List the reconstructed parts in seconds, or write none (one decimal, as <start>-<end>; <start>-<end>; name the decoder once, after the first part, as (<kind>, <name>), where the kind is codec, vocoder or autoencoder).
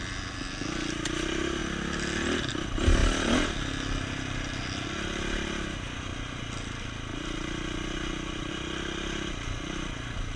none